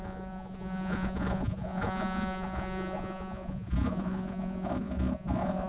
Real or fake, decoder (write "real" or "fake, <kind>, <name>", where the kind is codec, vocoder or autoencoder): fake, vocoder, Vocos